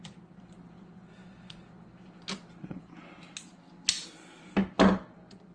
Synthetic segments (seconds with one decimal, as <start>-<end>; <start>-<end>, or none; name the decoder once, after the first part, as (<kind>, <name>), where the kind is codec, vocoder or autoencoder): none